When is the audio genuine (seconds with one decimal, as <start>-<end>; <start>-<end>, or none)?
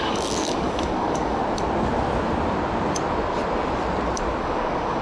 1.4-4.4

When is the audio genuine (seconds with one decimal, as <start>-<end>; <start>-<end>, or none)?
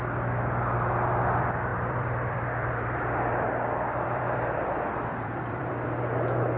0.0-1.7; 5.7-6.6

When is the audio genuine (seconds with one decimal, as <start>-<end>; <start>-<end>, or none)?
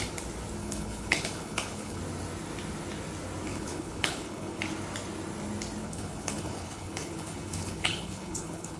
0.0-0.6; 2.0-3.5; 4.6-5.8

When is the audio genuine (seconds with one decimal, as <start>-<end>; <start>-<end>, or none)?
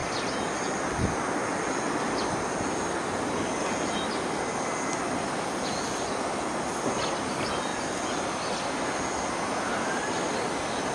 0.0-10.9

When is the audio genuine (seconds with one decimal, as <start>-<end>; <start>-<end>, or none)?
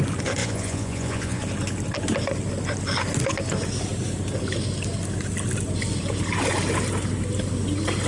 0.0-0.4; 1.4-8.1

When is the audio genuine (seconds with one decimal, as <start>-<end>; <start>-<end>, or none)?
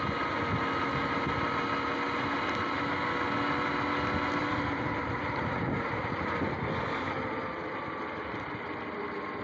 0.0-4.4; 6.3-9.4